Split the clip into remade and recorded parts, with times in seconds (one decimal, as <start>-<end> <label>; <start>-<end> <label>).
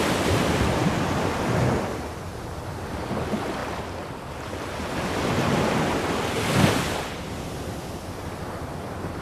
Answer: 0.0-9.2 recorded